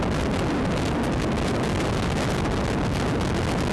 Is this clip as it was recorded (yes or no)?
yes